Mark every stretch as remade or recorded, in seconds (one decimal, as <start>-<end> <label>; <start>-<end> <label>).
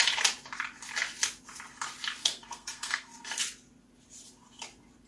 0.0-2.2 recorded; 2.2-3.4 remade; 3.4-5.1 recorded